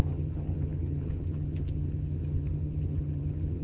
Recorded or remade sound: remade